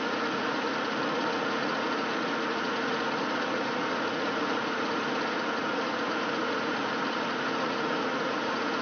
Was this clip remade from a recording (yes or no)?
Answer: yes